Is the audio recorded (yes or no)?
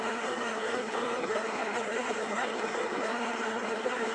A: no